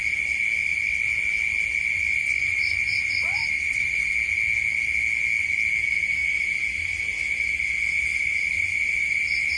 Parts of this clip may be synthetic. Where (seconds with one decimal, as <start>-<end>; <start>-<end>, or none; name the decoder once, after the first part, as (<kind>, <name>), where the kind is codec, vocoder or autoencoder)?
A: 2.1-4.1 (vocoder, Vocos)